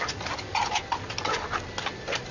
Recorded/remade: recorded